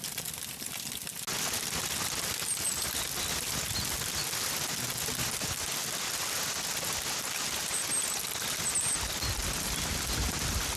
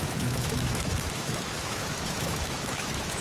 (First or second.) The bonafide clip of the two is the first